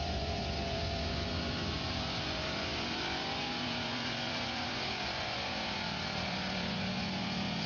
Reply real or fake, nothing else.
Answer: fake